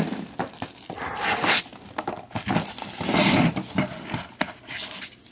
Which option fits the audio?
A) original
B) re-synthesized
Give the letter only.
A